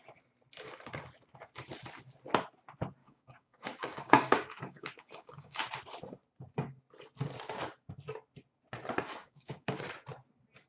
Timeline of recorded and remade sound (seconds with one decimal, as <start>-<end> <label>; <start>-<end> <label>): 0.0-3.0 recorded; 3.0-5.7 remade; 5.7-9.2 recorded; 9.2-9.8 remade; 9.8-10.7 recorded